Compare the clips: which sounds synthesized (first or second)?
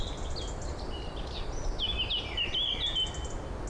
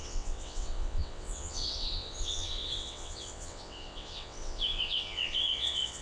second